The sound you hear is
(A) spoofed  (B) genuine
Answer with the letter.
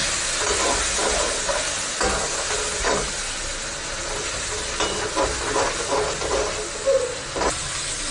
B